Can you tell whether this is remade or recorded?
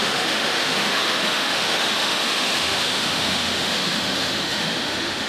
remade